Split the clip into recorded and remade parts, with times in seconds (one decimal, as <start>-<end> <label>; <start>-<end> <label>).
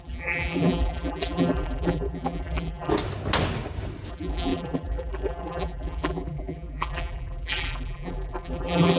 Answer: 0.0-2.9 remade; 2.9-4.1 recorded; 4.1-9.0 remade